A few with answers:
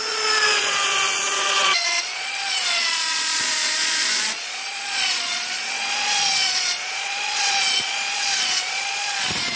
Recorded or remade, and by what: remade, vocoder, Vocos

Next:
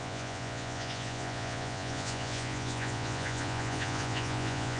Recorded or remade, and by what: remade, vocoder, Vocos